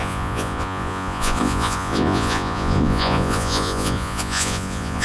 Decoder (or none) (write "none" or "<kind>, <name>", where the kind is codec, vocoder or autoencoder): vocoder, Vocos